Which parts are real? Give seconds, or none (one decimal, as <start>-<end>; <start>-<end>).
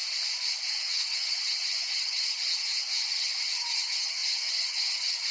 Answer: 0.0-0.7